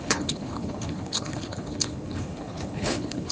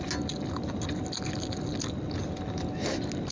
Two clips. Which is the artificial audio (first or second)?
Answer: first